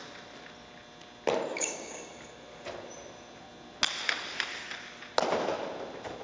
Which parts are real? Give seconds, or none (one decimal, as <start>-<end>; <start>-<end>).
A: 0.0-1.5; 2.1-6.2